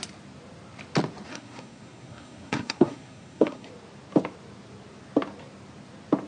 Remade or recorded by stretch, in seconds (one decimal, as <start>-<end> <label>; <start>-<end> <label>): 0.0-1.3 recorded; 1.3-3.7 remade; 3.7-6.3 recorded